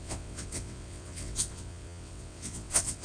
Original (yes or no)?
no